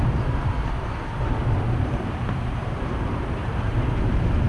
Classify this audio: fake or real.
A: fake